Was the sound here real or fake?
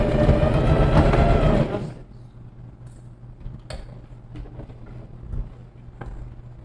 real